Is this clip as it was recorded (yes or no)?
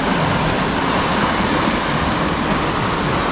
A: yes